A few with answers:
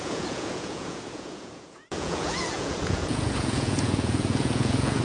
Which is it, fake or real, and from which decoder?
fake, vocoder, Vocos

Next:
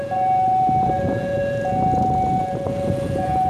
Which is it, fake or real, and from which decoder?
fake, vocoder, Vocos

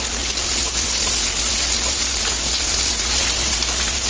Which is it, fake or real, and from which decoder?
real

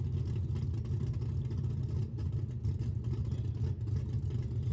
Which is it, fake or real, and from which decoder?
real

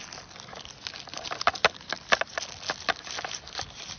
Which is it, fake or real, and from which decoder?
real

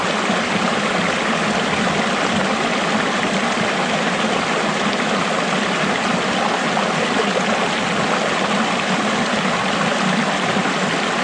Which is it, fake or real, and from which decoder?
real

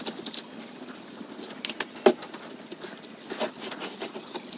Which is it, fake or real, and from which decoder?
real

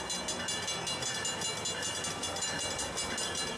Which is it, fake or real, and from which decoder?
real